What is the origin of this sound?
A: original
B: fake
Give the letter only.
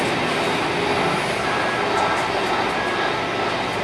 A